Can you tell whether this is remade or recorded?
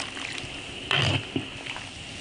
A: recorded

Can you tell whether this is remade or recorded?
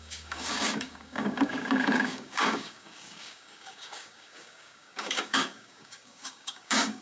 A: remade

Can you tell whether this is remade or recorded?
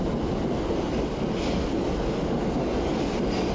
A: recorded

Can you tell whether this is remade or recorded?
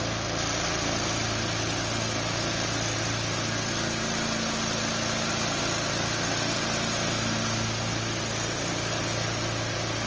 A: recorded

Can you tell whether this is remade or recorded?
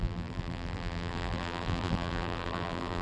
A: remade